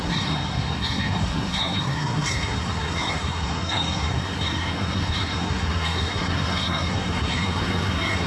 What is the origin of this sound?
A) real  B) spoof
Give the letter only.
B